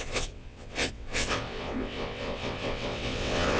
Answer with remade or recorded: remade